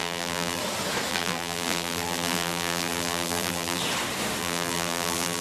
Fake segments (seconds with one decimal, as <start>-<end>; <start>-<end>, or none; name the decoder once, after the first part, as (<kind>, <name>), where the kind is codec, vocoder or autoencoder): 0.0-0.6 (vocoder, BigVGAN v2); 1.1-3.8; 4.4-5.4